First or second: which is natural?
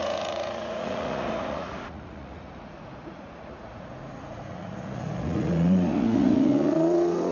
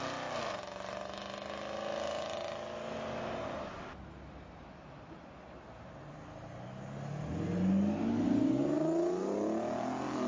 second